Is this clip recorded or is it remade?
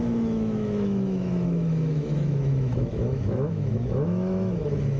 remade